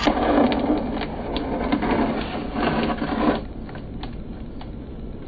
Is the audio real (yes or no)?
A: yes